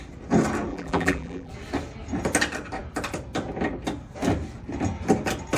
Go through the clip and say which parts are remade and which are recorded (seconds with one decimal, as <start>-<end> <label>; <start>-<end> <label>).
0.0-0.7 recorded; 0.7-1.5 remade; 1.5-5.6 recorded